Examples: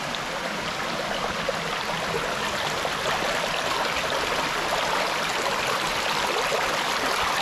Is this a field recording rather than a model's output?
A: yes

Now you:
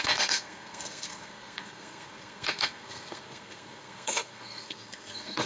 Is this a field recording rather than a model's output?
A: no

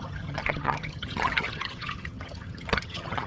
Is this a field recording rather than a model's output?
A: no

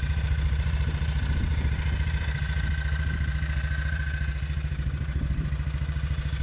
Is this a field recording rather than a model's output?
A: no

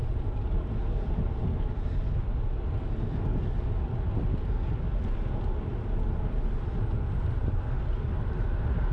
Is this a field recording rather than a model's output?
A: yes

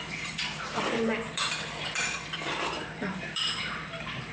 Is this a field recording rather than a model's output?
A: no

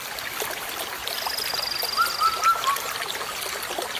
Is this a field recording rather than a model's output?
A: yes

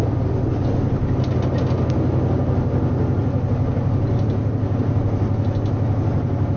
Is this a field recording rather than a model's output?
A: yes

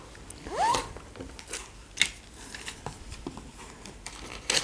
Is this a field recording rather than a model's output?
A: yes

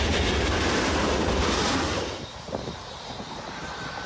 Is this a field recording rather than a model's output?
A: yes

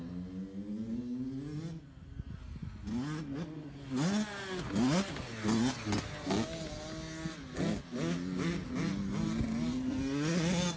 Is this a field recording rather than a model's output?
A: yes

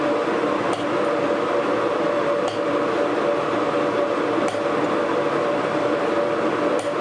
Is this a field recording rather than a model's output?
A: yes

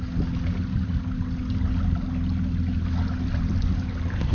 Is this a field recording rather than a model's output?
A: yes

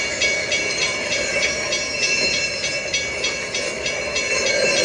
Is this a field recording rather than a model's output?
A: yes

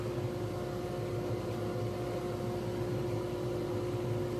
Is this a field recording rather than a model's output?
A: yes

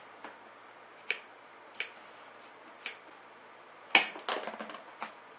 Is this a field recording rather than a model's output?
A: yes